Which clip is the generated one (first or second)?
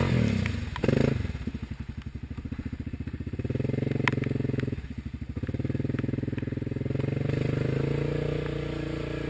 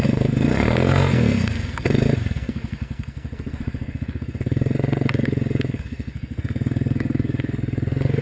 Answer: second